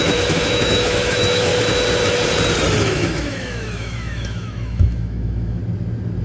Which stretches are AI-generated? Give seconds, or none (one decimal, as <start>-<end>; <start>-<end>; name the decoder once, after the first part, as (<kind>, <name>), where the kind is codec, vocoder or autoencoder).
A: 0.0-1.5 (autoencoder, DAC-VAE); 2.8-5.6